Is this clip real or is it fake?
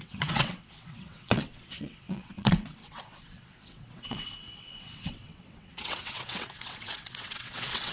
fake